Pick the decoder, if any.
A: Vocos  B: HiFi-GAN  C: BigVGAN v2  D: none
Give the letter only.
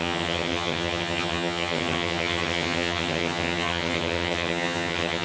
B